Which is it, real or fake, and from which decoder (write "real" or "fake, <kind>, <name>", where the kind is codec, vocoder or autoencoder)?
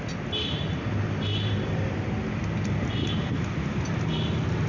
real